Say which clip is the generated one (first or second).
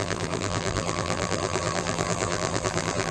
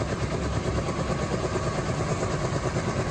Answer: first